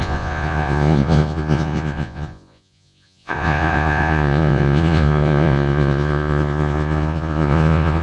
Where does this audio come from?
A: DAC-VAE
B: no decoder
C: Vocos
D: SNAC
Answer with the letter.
C